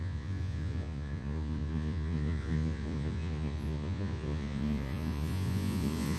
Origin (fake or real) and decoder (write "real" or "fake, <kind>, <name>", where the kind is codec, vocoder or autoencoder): fake, vocoder, Vocos